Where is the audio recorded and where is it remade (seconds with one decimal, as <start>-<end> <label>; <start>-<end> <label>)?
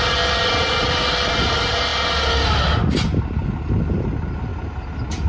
0.0-5.3 recorded